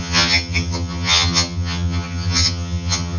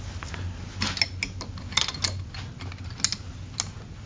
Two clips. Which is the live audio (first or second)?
second